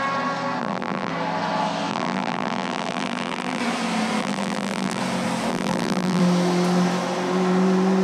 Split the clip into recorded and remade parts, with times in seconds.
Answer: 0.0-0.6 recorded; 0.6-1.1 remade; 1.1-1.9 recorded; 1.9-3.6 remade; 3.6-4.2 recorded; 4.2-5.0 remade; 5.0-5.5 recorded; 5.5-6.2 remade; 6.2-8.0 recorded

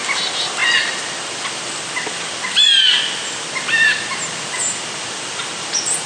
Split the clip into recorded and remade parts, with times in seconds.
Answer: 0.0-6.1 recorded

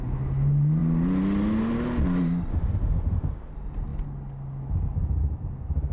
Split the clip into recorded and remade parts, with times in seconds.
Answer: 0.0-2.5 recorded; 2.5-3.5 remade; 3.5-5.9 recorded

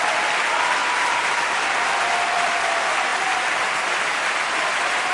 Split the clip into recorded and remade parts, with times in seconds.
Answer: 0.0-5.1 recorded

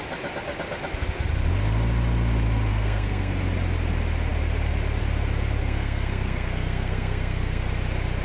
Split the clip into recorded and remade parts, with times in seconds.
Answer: 0.0-2.7 recorded; 2.7-3.3 remade; 3.3-5.6 recorded; 5.6-7.6 remade; 7.6-8.2 recorded

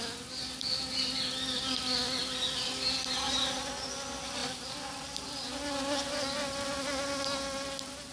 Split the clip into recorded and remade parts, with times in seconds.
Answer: 0.0-4.4 recorded; 4.4-6.8 remade; 6.8-8.1 recorded